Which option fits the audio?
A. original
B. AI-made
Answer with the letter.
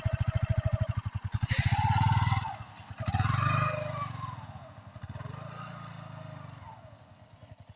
A